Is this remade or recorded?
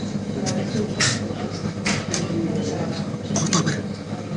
remade